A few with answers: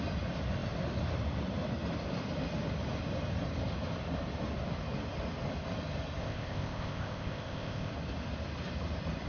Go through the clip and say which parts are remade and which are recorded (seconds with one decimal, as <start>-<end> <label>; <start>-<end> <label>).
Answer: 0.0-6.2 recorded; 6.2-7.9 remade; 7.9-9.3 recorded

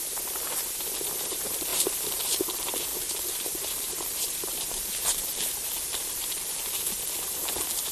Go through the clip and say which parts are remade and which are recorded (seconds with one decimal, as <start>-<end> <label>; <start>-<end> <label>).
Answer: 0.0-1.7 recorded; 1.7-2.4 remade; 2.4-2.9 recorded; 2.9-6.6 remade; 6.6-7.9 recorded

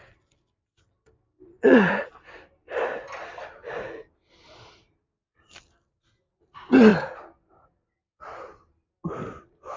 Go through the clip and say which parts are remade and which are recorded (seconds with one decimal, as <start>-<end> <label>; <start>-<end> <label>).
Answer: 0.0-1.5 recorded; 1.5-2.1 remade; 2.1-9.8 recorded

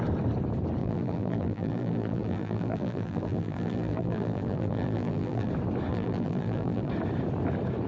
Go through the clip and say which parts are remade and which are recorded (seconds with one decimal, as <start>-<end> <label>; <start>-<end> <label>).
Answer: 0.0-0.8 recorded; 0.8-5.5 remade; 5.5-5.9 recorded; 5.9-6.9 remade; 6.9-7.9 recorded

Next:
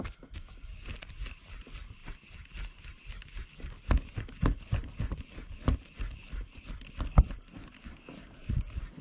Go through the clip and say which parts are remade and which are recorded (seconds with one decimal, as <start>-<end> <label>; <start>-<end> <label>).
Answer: 0.0-9.0 recorded